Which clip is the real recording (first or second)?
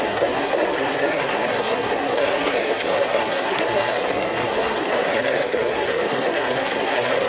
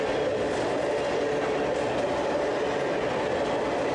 second